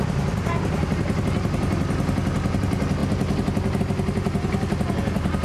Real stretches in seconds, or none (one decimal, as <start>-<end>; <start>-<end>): 0.0-5.4